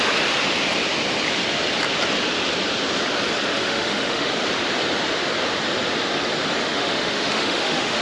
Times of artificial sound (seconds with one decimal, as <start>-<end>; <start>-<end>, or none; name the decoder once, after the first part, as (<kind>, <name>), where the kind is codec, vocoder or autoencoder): 3.5-4.3 (autoencoder, DAC-VAE); 6.6-8.0